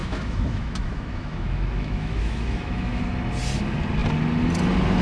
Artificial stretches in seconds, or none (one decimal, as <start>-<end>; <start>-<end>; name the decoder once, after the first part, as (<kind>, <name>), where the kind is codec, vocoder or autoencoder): 0.0-3.0 (autoencoder, DAC-VAE)